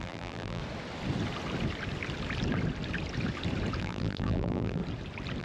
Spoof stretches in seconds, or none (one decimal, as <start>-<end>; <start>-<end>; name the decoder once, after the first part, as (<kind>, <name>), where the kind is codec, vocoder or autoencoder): 0.0-0.6 (vocoder, BigVGAN v2); 3.8-4.8